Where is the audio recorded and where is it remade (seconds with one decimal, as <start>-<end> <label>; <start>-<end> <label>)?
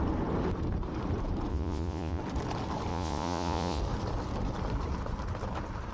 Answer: 0.0-1.5 recorded; 1.5-2.2 remade; 2.2-2.9 recorded; 2.9-3.8 remade; 3.8-5.9 recorded